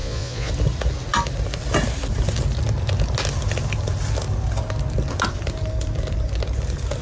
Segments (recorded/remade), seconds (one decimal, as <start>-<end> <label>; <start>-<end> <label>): 0.0-0.5 remade; 0.5-7.0 recorded